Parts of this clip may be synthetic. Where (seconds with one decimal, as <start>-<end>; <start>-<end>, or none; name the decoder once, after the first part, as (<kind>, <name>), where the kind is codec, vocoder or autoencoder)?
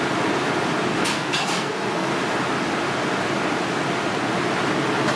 0.9-2.1 (codec, SNAC)